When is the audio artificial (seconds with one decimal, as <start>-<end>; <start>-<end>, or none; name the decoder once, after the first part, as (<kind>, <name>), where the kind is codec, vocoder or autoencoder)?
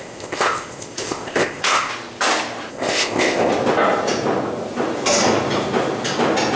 0.0-1.9 (codec, ZipCodec); 2.7-3.5